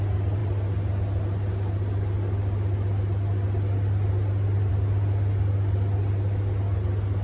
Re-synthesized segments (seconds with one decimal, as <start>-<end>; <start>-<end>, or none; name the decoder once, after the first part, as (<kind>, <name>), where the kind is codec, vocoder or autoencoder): none